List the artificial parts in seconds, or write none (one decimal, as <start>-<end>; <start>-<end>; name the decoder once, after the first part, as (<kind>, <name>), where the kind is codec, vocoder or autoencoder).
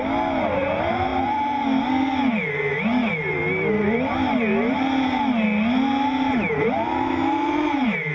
none